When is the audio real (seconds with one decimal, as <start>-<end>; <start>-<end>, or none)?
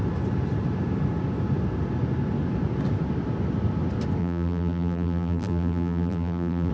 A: 0.0-4.2